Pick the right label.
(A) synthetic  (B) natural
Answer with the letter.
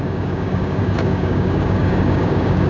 A